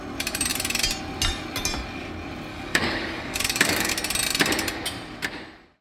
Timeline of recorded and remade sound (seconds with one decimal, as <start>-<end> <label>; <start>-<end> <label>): 0.0-2.5 recorded; 2.5-3.9 remade; 3.9-5.8 recorded